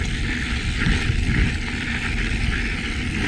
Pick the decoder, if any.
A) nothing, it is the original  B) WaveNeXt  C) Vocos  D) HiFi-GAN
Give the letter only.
A